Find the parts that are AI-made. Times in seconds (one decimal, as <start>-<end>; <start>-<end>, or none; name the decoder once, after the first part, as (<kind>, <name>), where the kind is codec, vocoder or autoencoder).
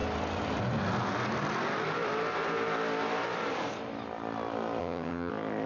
4.8-5.3 (vocoder, HiFi-GAN)